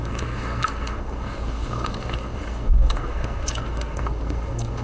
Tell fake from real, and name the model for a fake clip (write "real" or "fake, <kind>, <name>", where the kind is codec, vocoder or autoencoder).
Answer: fake, codec, SNAC